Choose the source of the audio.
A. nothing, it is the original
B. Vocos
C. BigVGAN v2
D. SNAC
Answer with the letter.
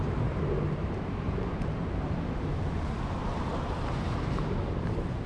C